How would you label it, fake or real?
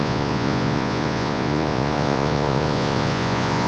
fake